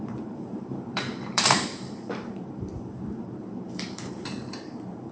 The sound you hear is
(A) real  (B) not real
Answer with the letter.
B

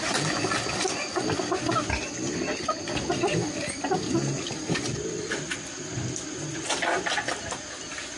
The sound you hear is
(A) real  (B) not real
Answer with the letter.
A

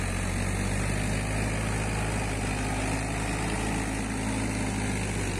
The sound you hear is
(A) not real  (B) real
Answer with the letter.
B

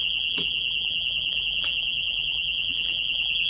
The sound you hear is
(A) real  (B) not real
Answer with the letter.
B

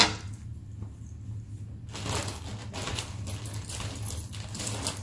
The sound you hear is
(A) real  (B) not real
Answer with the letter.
A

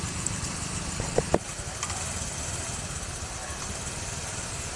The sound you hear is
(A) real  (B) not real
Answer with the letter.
A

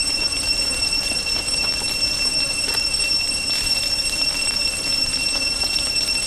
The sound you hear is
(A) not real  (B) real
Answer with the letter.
A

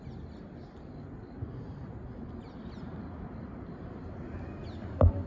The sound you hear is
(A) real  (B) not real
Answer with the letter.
A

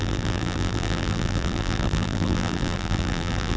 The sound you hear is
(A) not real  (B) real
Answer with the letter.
A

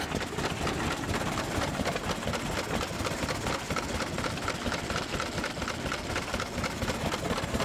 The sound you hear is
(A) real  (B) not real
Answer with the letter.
A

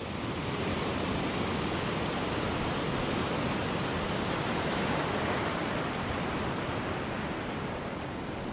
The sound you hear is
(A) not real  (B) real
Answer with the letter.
B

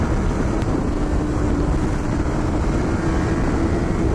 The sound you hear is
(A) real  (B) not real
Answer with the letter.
B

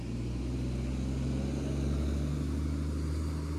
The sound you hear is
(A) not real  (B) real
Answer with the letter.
B